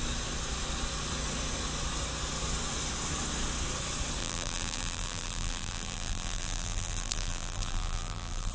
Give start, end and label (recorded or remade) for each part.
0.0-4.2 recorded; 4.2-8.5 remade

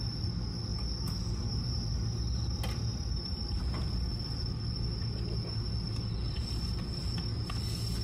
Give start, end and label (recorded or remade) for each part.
0.0-2.9 recorded; 2.9-5.4 remade; 5.4-8.0 recorded